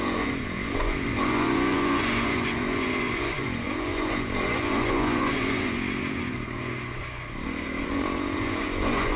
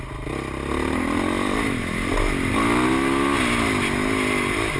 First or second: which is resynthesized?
first